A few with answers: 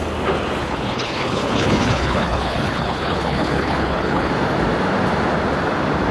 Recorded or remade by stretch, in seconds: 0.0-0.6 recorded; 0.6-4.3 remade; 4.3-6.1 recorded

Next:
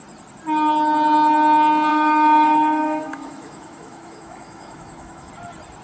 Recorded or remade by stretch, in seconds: 0.0-1.9 recorded; 1.9-5.3 remade; 5.3-5.8 recorded

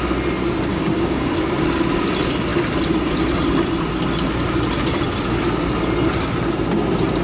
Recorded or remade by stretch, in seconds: 0.0-0.7 recorded; 0.7-1.3 remade; 1.3-7.2 recorded

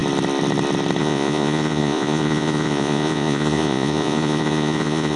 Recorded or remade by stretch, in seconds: 0.0-1.0 recorded; 1.0-5.2 remade

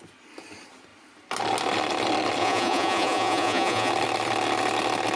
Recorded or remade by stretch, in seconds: 0.0-2.4 recorded; 2.4-3.9 remade; 3.9-5.2 recorded

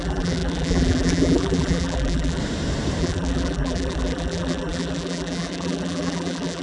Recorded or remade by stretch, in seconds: 0.0-2.4 remade; 2.4-3.0 recorded; 3.0-6.6 remade